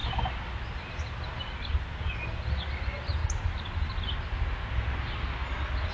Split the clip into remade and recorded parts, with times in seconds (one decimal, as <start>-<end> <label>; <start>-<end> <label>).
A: 0.0-5.9 recorded